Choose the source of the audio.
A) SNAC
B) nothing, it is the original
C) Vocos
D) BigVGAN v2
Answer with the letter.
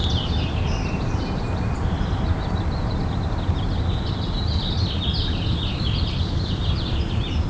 B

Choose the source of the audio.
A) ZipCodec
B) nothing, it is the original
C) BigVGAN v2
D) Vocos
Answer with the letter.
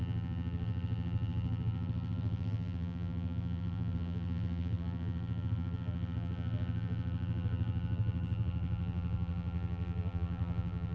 C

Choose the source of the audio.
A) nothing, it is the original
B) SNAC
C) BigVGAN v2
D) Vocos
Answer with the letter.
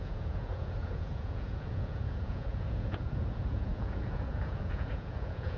D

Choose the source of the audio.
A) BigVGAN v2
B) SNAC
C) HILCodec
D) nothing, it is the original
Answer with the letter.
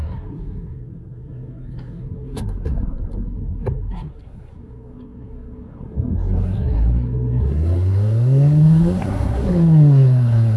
B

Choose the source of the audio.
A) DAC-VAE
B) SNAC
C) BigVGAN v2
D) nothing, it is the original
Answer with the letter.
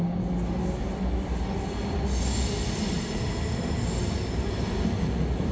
D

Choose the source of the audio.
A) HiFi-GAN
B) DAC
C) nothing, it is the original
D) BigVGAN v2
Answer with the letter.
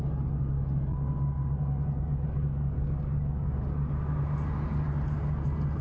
C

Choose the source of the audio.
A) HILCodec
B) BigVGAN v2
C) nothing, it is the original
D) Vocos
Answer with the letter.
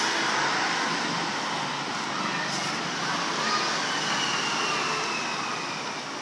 C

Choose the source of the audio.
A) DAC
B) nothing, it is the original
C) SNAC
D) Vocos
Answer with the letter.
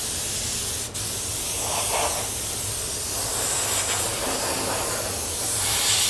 B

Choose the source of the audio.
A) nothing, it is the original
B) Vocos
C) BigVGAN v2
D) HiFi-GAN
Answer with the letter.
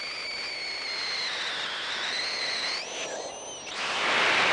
A